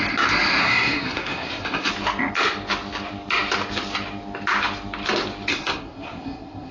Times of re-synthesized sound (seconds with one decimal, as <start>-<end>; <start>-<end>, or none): 0.6-1.9; 5.5-6.7